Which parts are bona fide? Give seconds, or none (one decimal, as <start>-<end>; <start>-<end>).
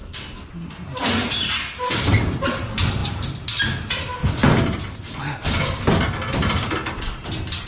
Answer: 0.0-3.0; 3.6-7.7